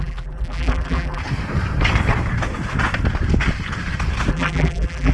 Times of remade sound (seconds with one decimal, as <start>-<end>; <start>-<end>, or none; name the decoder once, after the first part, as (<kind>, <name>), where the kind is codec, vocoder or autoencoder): 0.0-1.2 (vocoder, BigVGAN v2); 4.3-5.1